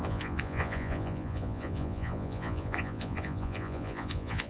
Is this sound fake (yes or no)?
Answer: yes